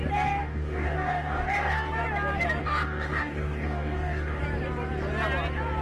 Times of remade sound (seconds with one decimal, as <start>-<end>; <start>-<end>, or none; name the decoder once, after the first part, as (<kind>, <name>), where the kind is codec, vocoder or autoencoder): 0.4-1.9 (codec, DAC); 2.6-4.4